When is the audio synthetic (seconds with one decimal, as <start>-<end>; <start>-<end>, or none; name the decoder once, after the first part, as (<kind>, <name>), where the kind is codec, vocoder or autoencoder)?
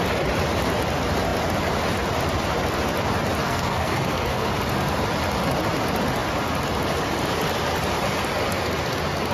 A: 3.4-4.5 (codec, SNAC)